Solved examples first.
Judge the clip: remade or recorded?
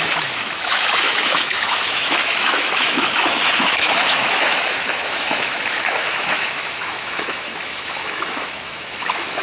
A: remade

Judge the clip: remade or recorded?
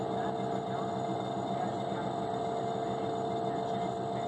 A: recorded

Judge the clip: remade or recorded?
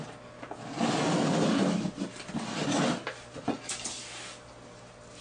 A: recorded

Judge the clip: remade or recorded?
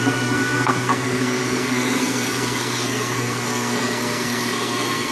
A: remade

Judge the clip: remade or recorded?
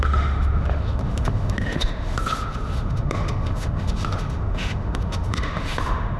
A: remade